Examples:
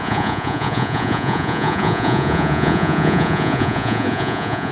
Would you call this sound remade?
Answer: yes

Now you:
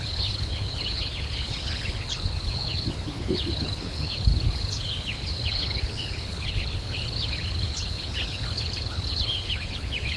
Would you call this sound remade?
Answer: yes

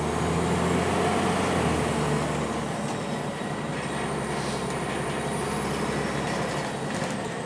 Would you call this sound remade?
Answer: no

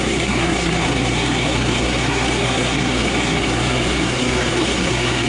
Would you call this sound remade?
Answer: yes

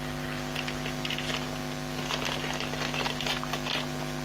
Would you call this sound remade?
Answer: no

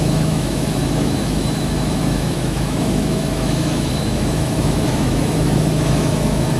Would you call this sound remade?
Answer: yes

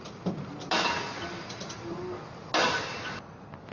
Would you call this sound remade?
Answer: no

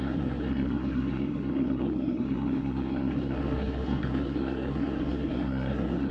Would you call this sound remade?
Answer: yes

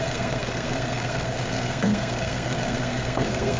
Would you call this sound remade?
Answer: yes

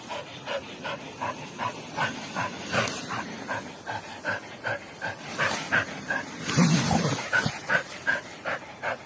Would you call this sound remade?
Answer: no